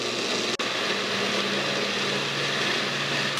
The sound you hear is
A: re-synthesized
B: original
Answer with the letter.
B